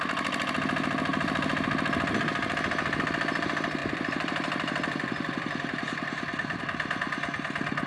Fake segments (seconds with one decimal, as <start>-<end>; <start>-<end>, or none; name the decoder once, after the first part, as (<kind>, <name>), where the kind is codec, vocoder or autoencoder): 1.1-2.2 (vocoder, BigVGAN v2); 3.8-6.6